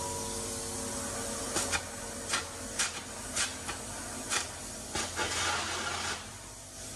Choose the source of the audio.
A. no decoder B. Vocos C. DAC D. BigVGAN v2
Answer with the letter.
A